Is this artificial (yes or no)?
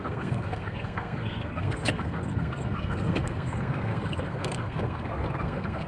yes